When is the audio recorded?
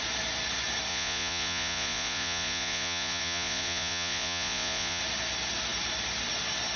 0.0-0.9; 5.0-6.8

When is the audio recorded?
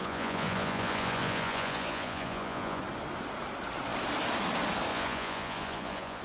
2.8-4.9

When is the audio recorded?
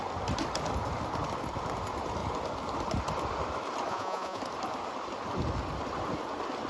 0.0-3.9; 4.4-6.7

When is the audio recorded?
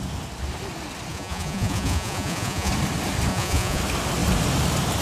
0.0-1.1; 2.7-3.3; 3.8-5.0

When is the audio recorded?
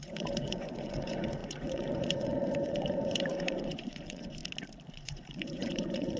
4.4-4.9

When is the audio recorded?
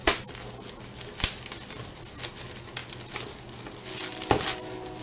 0.0-5.0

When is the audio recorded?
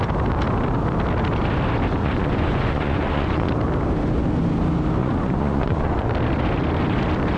0.0-2.0; 3.5-5.0; 6.1-7.4